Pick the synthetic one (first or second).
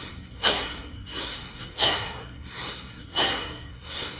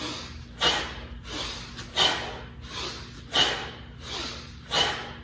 first